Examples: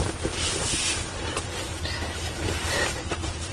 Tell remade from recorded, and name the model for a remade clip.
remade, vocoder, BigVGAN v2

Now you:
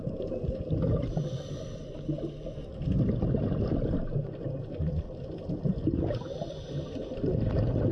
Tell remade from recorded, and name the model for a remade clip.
recorded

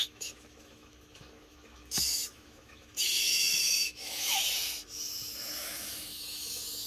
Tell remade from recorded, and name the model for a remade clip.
remade, autoencoder, DAC-VAE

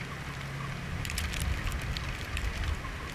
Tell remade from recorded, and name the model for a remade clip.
recorded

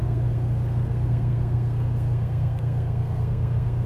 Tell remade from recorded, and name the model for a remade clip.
remade, codec, SNAC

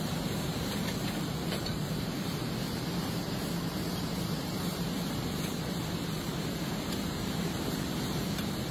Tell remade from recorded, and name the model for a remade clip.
remade, vocoder, BigVGAN v2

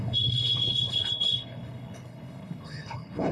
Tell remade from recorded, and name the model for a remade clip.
remade, codec, HILCodec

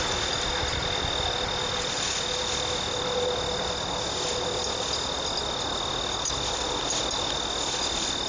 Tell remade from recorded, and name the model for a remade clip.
recorded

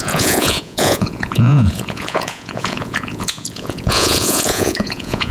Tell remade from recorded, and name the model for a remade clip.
remade, vocoder, Vocos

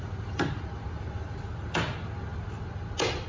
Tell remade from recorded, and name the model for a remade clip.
recorded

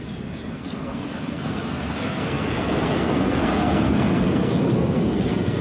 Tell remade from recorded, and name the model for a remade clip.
remade, codec, SNAC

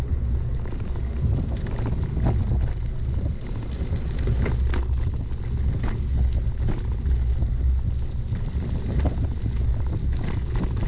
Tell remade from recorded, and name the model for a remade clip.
recorded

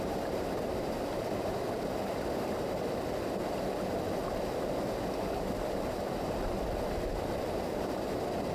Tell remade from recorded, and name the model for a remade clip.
recorded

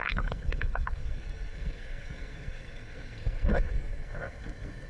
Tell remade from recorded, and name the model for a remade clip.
remade, codec, SNAC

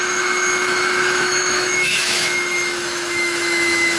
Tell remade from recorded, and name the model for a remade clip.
remade, autoencoder, DAC-VAE